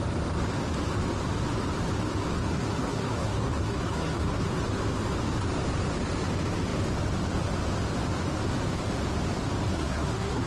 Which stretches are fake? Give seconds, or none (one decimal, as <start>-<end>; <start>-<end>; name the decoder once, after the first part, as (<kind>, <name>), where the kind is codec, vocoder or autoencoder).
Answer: 2.4-4.5 (codec, SNAC); 9.7-10.5